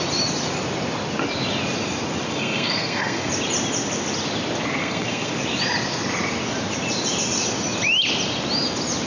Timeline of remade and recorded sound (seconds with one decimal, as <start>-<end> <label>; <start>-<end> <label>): 0.0-2.3 recorded; 2.3-3.3 remade; 3.3-4.8 recorded; 4.8-5.3 remade; 5.3-9.1 recorded